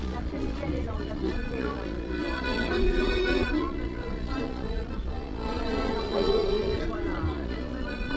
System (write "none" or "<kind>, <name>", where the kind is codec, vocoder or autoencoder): vocoder, Vocos